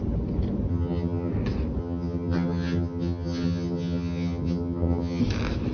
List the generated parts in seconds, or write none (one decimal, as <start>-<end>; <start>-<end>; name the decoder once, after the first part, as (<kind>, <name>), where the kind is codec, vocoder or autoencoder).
0.7-1.3 (vocoder, HiFi-GAN); 1.8-5.2